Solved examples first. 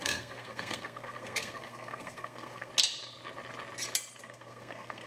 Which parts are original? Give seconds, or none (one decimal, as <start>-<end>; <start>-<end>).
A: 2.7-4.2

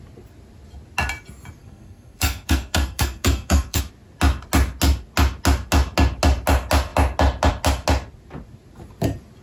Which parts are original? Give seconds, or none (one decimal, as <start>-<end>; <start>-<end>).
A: 0.0-1.6; 3.8-9.4

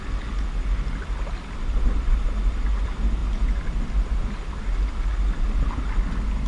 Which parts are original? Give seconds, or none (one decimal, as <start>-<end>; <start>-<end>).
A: 0.0-6.5

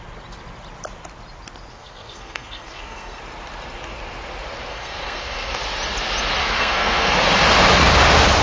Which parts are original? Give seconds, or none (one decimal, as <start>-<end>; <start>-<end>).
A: 0.0-1.7; 3.2-4.7; 5.5-6.4; 7.1-8.4